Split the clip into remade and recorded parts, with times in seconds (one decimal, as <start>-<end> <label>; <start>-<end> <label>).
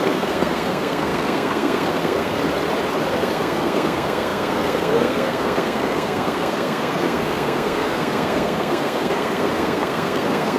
0.0-2.4 remade; 2.4-3.1 recorded; 3.1-10.6 remade